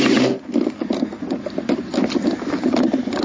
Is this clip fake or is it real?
real